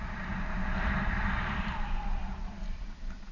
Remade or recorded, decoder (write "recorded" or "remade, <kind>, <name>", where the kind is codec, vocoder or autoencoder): recorded